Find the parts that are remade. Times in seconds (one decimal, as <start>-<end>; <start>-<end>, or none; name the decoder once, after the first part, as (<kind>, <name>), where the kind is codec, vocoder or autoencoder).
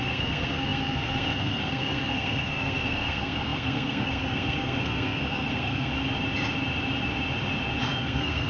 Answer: 0.0-5.9 (codec, SNAC); 7.8-8.5